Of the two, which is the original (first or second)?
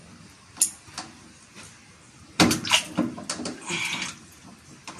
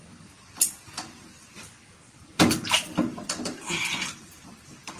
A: first